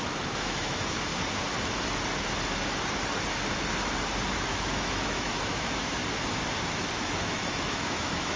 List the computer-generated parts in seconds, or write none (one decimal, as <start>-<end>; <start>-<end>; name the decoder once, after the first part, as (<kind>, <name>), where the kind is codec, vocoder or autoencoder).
0.0-1.1 (autoencoder, DAC-VAE); 4.3-6.0; 6.7-8.4